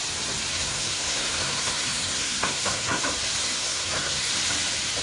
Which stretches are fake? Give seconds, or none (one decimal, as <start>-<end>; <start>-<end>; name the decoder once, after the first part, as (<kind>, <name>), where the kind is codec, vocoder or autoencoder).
0.5-3.0 (codec, SNAC); 3.4-4.3

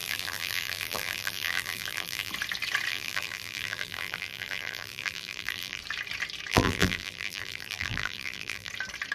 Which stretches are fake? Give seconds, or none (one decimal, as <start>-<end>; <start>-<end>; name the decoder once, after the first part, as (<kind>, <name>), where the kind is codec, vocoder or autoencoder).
0.0-2.3 (vocoder, BigVGAN v2); 2.9-5.8; 6.5-8.7

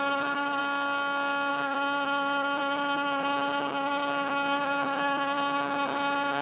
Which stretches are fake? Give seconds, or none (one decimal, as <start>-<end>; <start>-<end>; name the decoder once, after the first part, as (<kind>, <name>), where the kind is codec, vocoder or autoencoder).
0.0-0.6 (vocoder, HiFi-GAN); 1.5-6.4

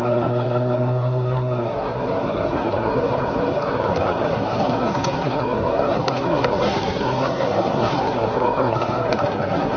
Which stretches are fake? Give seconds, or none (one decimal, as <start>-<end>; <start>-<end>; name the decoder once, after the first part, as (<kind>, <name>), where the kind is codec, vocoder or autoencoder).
0.0-9.8 (codec, SNAC)

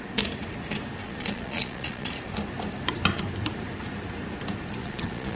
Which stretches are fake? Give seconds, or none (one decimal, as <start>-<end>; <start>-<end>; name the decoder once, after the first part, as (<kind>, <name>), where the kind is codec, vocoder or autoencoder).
1.0-2.1 (vocoder, Vocos); 4.8-5.4

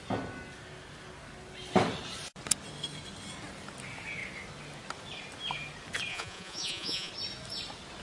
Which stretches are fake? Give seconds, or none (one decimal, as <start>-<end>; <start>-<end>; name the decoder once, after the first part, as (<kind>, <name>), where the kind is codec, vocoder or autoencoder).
6.1-7.1 (vocoder, Vocos)

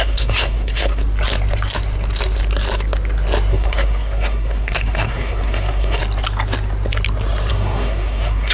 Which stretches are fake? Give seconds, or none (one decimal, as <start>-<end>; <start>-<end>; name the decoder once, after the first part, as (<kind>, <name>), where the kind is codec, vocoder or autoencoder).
0.0-1.0 (codec, SNAC); 3.5-6.0; 7.5-8.5

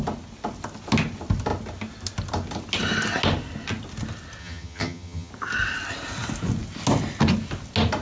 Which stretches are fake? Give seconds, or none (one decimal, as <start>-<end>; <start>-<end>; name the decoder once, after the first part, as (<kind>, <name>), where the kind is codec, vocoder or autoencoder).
4.4-5.3 (vocoder, HiFi-GAN)